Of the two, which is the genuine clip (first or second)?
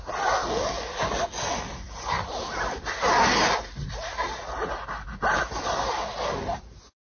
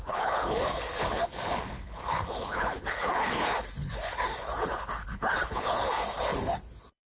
first